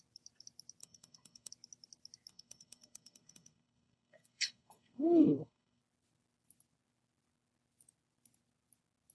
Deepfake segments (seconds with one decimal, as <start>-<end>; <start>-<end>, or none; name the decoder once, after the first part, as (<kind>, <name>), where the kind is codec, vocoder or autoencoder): 0.8-1.5 (codec, SNAC); 2.3-5.8